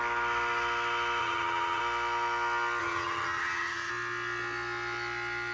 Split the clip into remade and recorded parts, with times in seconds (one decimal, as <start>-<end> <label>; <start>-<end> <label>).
0.0-1.2 recorded; 1.2-1.8 remade; 1.8-2.8 recorded; 2.8-3.9 remade; 3.9-5.5 recorded